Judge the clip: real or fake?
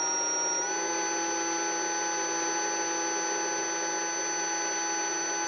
real